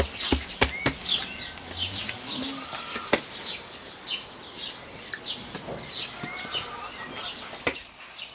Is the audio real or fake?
real